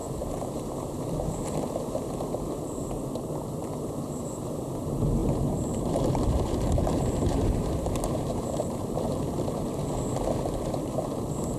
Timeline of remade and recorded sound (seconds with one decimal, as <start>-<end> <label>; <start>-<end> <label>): 0.0-1.6 remade; 1.6-3.6 recorded; 3.6-4.7 remade; 4.7-5.2 recorded; 5.2-9.2 remade; 9.2-11.6 recorded